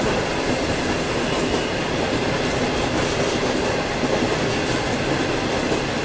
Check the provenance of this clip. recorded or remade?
recorded